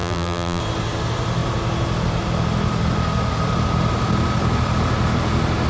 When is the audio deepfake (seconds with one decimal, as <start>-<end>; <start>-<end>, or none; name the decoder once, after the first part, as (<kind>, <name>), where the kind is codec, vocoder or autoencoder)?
0.0-0.6 (vocoder, BigVGAN v2)